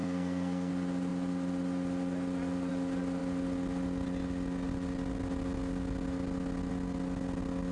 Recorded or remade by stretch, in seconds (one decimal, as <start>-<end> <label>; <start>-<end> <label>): 0.0-0.7 remade; 0.7-7.7 recorded